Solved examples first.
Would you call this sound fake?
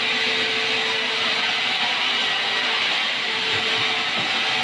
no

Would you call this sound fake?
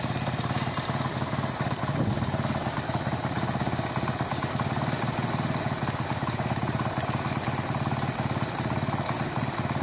no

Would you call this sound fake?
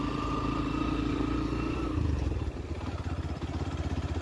no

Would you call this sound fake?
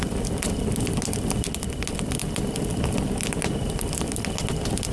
no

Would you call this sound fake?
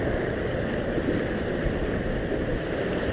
no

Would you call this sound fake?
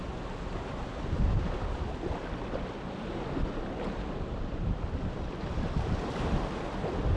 no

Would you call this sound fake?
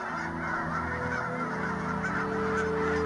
no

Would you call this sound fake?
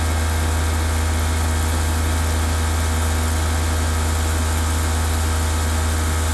no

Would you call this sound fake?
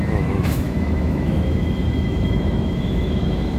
yes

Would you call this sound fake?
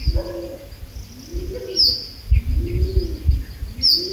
no